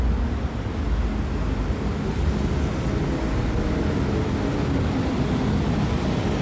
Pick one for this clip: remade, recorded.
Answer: recorded